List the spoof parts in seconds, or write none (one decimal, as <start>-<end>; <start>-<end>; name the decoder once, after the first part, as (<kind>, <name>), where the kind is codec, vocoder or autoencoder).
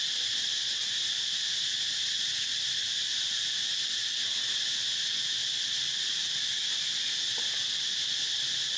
none